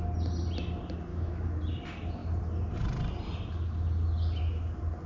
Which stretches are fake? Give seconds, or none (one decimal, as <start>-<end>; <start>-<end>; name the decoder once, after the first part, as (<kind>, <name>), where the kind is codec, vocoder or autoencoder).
1.1-1.6 (autoencoder, DAC-VAE)